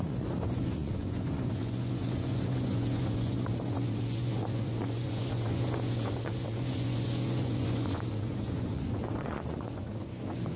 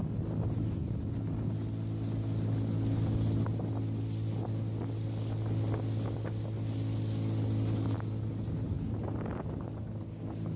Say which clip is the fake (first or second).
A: first